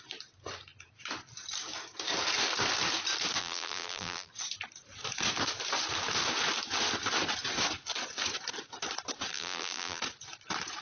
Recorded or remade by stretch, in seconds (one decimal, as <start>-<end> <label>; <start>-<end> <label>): 0.0-3.4 recorded; 3.4-4.3 remade; 4.3-9.3 recorded; 9.3-10.0 remade; 10.0-10.8 recorded